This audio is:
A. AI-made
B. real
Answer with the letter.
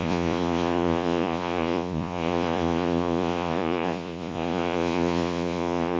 A